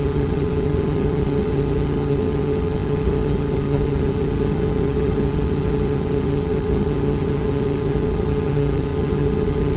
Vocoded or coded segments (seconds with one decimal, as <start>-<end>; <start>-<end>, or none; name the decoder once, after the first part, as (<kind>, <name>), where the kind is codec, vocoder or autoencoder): 0.0-9.8 (vocoder, HiFi-GAN)

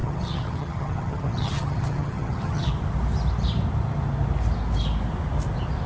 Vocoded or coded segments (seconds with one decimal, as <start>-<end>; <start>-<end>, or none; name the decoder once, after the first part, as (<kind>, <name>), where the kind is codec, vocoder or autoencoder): 0.0-2.7 (vocoder, HiFi-GAN)

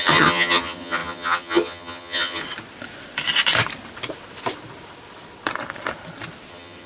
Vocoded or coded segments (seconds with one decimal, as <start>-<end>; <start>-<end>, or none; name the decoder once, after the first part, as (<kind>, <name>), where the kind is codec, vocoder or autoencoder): 0.0-2.4 (vocoder, HiFi-GAN); 6.5-6.9

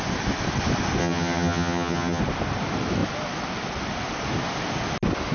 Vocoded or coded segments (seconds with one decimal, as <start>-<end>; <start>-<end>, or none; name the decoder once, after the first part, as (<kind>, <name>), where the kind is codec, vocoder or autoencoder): 1.0-2.2 (vocoder, HiFi-GAN)

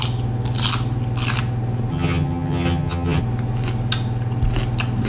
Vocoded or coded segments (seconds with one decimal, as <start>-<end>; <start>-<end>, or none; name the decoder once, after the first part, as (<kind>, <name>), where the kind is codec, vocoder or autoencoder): 1.9-3.2 (vocoder, HiFi-GAN)

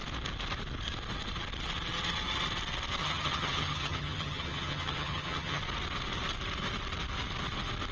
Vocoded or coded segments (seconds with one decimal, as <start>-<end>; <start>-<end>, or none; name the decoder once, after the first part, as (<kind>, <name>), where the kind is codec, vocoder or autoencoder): 3.0-5.6 (vocoder, HiFi-GAN)

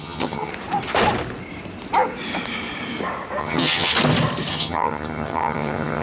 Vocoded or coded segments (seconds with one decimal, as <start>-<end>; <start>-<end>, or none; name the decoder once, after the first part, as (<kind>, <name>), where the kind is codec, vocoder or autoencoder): 0.0-0.5 (vocoder, HiFi-GAN); 3.4-3.9; 4.5-6.0

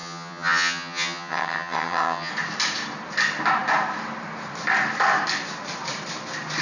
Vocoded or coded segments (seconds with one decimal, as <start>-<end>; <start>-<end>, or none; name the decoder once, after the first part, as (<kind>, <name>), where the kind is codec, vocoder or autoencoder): 0.0-2.3 (vocoder, HiFi-GAN)